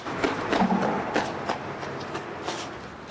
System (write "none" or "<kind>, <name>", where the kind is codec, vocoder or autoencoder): none